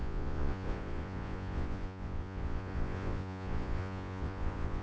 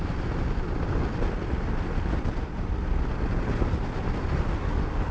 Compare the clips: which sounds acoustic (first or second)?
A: second